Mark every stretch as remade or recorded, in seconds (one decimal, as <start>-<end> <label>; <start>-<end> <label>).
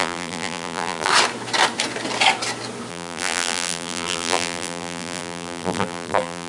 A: 0.0-1.1 remade; 1.1-2.9 recorded; 2.9-6.5 remade